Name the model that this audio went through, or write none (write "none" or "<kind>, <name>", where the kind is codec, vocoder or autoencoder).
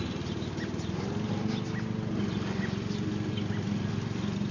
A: none